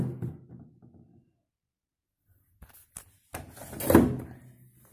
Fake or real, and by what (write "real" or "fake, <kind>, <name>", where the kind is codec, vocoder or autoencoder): real